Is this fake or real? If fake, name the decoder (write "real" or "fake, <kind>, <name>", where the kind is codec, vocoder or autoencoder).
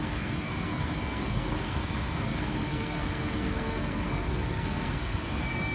fake, codec, SNAC